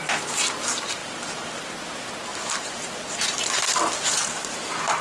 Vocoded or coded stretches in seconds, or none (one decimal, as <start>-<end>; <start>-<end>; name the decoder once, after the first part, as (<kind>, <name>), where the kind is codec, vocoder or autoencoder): 1.0-1.7 (vocoder, BigVGAN v2); 2.3-2.9